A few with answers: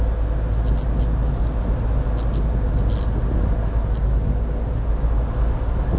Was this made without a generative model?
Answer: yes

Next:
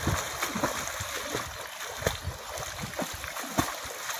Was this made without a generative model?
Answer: yes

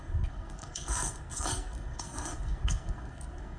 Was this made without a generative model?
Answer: no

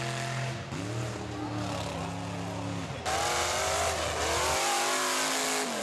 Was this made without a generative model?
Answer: yes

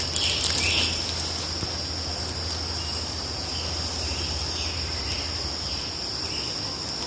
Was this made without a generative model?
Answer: yes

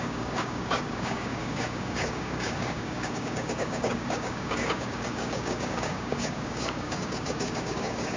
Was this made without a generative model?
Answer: no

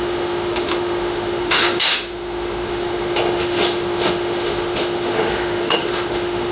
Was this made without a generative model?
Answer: no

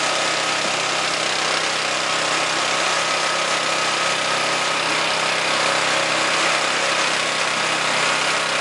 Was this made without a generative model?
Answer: yes